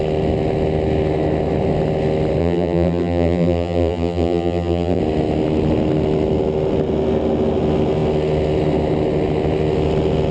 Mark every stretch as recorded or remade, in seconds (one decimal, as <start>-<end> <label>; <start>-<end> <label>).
0.0-2.4 recorded; 2.4-5.0 remade; 5.0-10.3 recorded